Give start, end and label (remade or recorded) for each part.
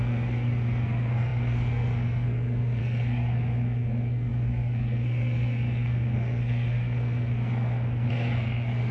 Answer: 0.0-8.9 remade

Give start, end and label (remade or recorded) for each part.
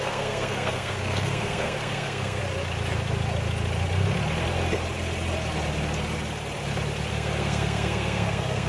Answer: 0.0-2.4 remade; 2.4-7.1 recorded; 7.1-8.7 remade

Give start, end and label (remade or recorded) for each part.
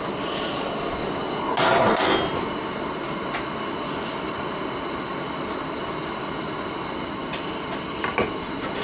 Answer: 0.0-8.8 recorded